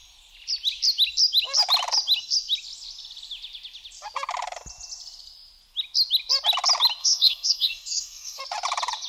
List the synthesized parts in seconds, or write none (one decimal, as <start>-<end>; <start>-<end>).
7.0-8.4

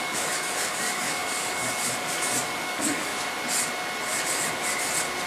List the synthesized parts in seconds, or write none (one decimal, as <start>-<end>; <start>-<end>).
0.0-3.1

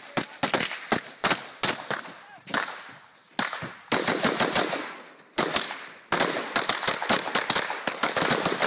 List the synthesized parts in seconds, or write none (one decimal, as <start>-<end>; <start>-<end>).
none

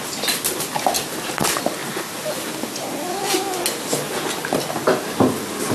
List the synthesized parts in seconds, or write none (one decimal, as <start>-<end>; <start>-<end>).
none

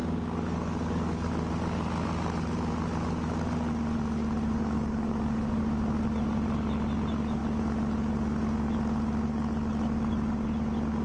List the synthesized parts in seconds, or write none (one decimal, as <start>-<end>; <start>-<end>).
0.0-1.3; 4.5-5.6

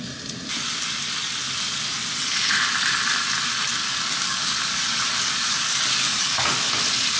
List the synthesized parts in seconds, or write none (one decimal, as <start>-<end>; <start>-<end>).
3.8-6.7

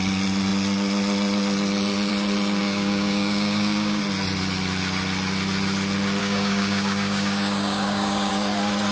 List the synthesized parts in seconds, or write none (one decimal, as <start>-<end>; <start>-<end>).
2.6-4.0; 6.2-8.3